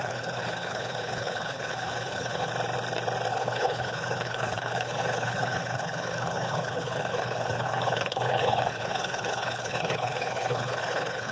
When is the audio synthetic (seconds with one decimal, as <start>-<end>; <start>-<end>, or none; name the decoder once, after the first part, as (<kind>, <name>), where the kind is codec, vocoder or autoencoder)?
0.0-2.5 (codec, HILCodec); 3.3-11.3